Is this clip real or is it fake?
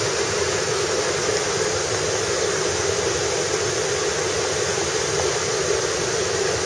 real